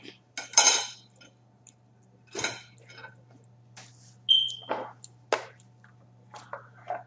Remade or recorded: recorded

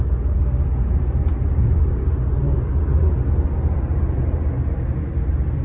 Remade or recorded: recorded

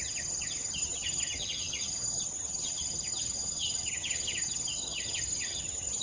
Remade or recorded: remade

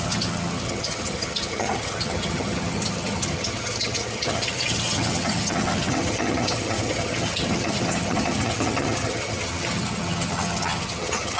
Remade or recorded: remade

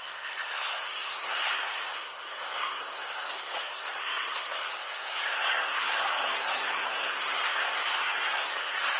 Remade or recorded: remade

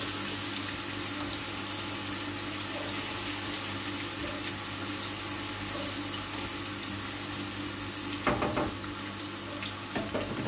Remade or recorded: recorded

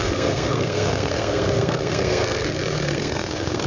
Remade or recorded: remade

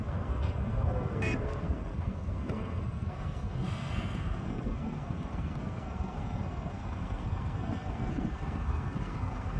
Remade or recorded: remade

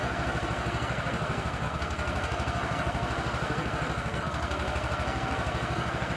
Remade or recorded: remade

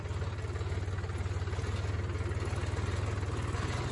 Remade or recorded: recorded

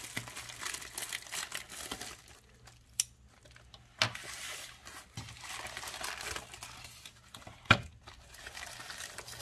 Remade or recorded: recorded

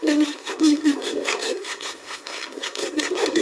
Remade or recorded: remade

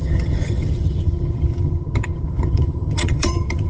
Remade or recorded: remade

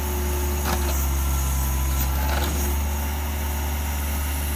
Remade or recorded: recorded